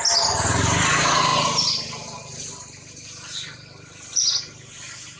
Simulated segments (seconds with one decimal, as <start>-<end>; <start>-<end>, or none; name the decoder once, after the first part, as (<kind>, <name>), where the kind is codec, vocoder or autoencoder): none